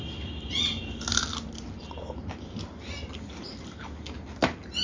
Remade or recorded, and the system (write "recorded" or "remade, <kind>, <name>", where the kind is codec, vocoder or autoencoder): recorded